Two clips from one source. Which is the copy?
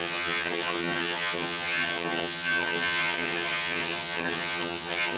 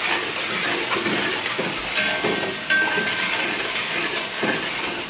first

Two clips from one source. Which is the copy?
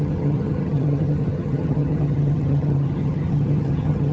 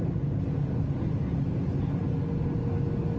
first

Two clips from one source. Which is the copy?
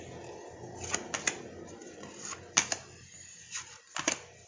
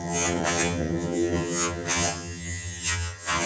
second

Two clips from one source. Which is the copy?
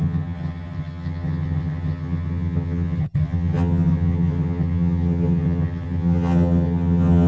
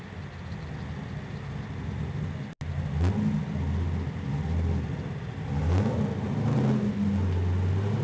first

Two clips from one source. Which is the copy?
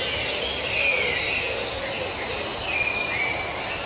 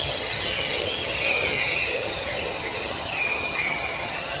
second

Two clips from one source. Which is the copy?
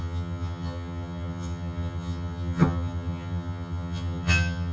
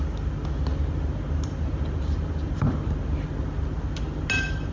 first